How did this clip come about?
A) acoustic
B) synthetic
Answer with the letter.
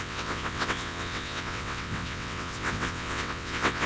B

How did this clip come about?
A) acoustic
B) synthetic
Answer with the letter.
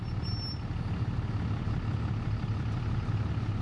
A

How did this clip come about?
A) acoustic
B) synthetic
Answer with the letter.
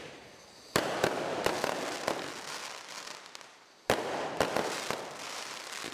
B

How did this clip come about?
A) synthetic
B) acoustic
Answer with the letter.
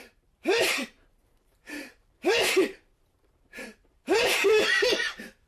A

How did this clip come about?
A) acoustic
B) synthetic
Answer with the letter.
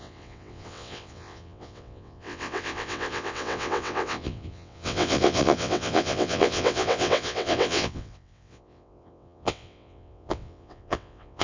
B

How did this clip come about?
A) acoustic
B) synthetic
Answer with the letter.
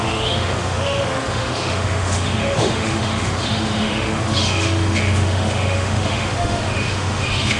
B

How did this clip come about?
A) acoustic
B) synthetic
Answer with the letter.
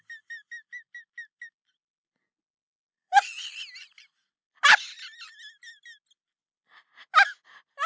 A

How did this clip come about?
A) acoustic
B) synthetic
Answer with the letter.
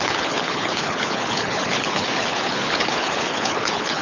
B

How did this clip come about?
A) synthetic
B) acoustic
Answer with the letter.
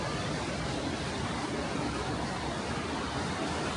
B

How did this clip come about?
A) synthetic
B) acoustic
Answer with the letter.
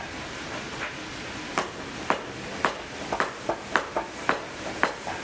B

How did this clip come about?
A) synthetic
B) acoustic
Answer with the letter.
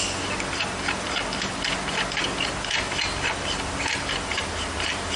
A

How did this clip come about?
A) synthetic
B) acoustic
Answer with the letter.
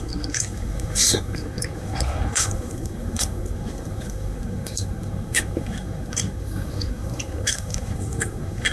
A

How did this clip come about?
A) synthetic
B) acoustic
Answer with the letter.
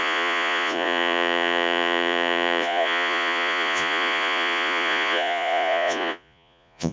A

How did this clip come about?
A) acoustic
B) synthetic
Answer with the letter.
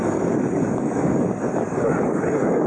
B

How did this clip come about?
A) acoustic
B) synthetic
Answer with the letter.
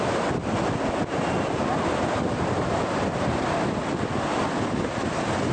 A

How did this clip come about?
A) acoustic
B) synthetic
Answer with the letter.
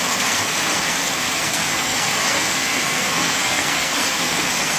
B